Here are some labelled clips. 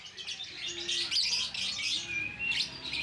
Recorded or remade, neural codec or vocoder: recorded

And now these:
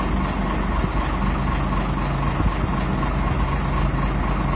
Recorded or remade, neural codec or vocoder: recorded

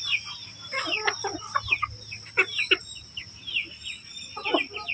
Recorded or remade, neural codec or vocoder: recorded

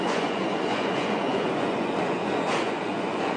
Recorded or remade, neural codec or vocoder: remade, vocoder, Vocos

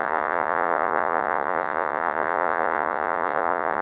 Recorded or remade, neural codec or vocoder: remade, vocoder, Vocos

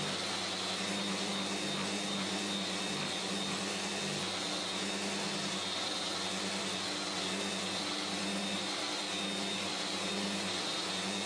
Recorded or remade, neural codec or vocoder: recorded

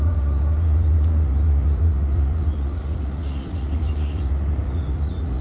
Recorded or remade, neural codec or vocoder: remade, vocoder, Vocos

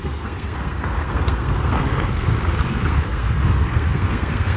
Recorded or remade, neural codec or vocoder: remade, codec, SNAC